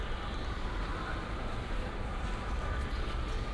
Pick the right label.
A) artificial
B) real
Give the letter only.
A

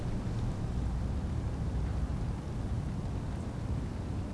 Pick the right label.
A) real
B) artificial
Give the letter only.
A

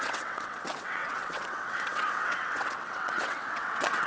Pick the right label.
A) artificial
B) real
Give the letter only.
A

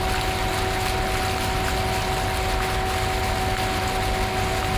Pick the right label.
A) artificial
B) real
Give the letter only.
B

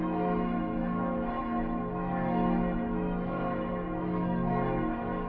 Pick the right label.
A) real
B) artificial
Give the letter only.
B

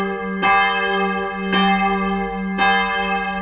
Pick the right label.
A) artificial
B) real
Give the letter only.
B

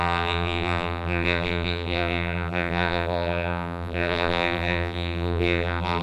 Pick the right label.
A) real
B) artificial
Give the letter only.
B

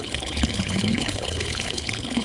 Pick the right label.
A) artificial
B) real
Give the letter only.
A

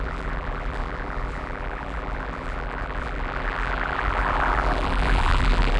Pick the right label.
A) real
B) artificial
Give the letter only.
B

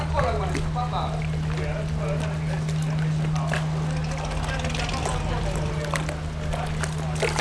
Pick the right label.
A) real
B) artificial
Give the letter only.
A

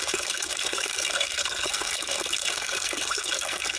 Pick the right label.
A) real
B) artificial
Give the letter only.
B